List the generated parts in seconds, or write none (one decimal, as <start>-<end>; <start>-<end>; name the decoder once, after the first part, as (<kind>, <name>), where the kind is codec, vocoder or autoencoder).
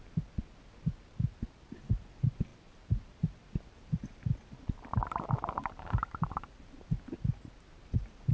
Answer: none